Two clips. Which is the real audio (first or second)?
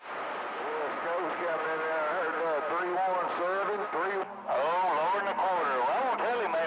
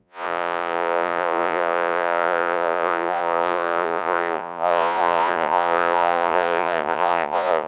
first